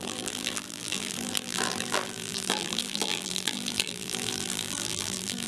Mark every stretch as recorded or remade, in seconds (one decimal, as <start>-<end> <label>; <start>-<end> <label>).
0.0-5.5 remade